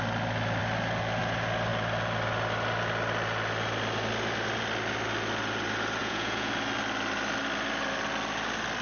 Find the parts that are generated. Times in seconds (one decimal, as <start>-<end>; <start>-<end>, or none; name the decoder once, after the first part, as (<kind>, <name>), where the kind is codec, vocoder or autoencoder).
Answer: 6.0-6.5 (vocoder, Vocos)